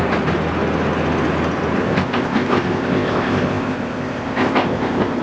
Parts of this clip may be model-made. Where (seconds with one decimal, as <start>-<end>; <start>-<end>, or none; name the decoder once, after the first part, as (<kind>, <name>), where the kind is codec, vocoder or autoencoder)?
1.8-5.2 (codec, ZipCodec)